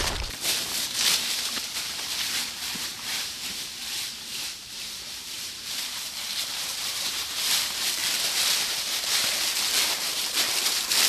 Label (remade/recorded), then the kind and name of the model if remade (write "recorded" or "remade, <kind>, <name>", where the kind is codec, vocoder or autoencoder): remade, vocoder, BigVGAN v2